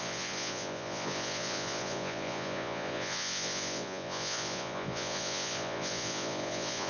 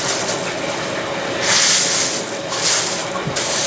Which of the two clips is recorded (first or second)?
second